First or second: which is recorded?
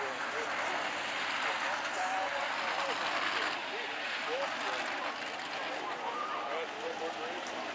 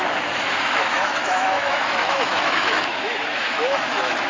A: first